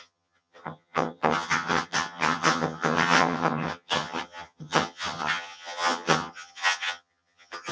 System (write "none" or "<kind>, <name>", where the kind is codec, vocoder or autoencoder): vocoder, HiFi-GAN